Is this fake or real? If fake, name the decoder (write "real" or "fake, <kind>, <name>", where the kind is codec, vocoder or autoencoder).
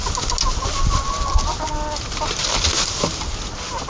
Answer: real